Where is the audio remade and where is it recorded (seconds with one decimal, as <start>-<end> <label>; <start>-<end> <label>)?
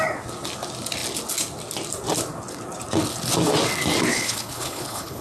0.0-4.1 recorded; 4.1-5.2 remade